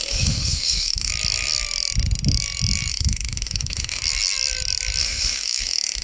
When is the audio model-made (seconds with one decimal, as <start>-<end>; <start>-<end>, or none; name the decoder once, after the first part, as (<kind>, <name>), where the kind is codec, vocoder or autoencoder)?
0.0-1.1 (autoencoder, DAC-VAE); 2.9-4.0; 5.0-6.0